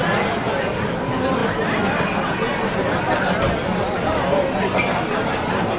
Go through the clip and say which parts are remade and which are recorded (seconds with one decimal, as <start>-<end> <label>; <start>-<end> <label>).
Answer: 0.0-5.8 recorded